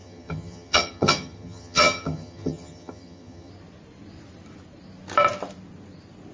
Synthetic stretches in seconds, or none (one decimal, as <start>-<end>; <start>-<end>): 0.0-3.5